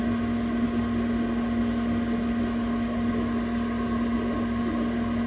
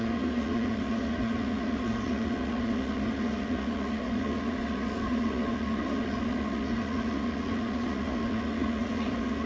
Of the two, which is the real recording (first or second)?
first